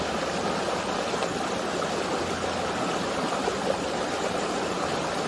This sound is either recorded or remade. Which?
recorded